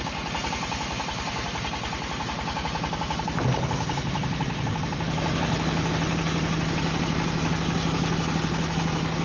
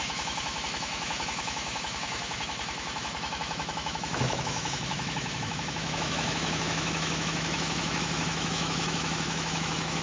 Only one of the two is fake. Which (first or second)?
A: second